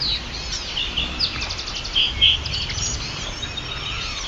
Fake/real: real